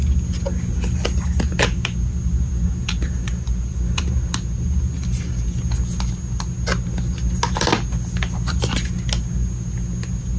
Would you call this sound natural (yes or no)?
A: yes